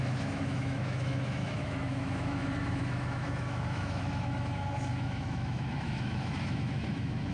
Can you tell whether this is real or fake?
fake